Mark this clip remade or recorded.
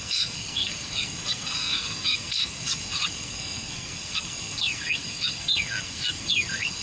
remade